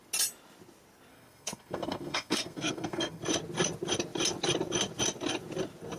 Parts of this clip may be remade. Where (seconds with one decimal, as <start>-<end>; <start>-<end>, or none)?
1.1-3.2